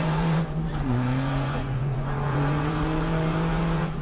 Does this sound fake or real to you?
fake